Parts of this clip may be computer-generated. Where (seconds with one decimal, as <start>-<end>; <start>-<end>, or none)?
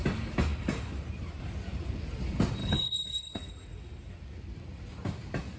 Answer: 2.6-3.5